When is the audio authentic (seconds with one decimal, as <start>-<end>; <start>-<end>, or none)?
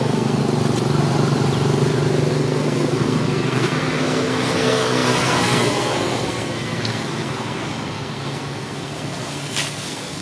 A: 0.4-2.3